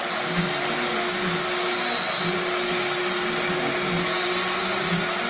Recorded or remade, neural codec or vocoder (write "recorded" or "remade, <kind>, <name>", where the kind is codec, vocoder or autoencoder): recorded